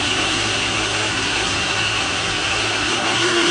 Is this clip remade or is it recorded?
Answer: remade